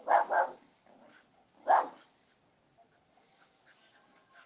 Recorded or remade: recorded